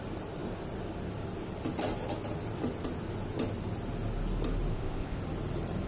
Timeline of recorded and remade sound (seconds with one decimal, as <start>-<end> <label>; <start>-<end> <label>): 0.0-4.7 recorded; 4.7-5.2 remade; 5.2-5.9 recorded